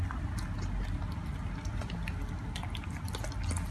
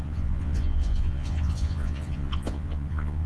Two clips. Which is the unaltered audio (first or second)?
first